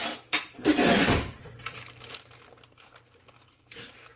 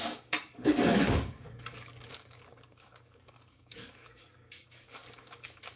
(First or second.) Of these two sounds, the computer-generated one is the second